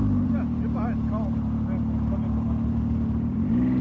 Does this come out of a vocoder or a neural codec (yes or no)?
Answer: no